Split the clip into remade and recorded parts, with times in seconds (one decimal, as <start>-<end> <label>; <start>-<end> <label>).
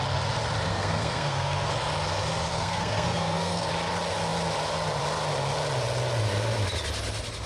0.0-0.7 recorded; 0.7-1.7 remade; 1.7-2.5 recorded; 2.5-3.7 remade; 3.7-7.5 recorded